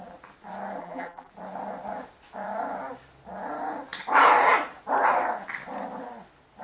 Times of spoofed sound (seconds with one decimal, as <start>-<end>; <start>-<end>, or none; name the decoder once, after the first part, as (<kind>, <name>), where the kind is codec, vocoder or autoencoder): 0.8-1.3 (vocoder, BigVGAN v2)